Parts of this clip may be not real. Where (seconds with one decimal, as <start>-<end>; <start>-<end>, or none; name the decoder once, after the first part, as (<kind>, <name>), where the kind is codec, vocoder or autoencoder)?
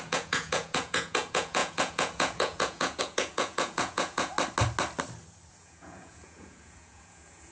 0.0-4.3 (vocoder, Vocos); 5.5-7.5